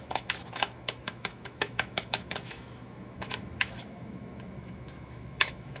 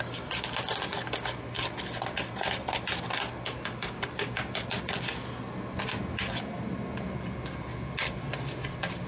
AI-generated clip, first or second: first